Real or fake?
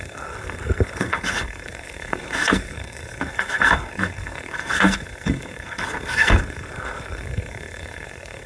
fake